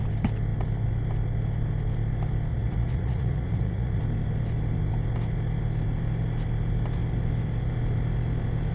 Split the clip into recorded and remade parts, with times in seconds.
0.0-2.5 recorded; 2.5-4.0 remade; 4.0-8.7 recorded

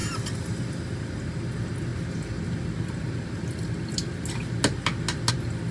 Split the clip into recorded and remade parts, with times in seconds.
0.0-5.7 recorded

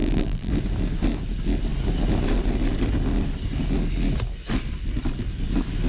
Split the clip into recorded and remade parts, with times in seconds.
0.0-0.5 remade; 0.5-5.9 recorded